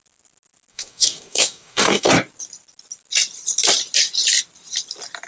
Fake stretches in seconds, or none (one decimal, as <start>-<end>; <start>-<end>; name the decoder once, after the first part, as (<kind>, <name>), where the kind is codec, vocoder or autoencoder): 0.7-2.1 (codec, DAC)

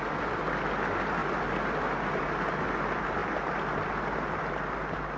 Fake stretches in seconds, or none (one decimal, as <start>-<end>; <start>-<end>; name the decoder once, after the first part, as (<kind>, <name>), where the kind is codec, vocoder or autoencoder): none

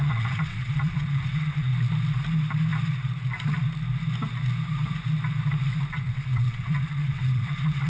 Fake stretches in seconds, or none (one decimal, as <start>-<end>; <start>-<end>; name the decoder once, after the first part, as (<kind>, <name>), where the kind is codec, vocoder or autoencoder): 0.0-1.7 (vocoder, WaveNeXt); 5.9-7.9

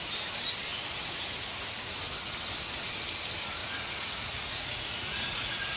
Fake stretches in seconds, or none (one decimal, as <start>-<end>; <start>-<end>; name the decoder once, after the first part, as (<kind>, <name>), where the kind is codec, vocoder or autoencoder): 3.6-5.8 (vocoder, Vocos)

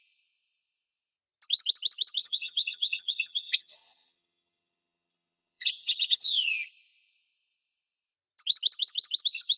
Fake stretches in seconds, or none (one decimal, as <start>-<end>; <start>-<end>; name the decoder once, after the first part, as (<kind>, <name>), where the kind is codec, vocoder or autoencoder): 2.2-6.5 (vocoder, HiFi-GAN)

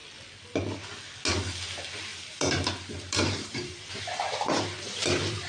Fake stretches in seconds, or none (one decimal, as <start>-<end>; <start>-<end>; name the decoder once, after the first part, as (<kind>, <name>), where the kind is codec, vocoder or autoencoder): 2.1-5.5 (vocoder, BigVGAN v2)

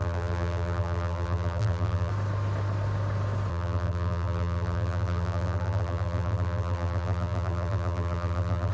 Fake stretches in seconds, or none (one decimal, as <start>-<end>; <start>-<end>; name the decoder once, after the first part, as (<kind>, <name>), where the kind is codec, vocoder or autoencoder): 0.0-2.1 (vocoder, BigVGAN v2); 3.5-8.7